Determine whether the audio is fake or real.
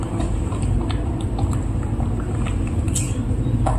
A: real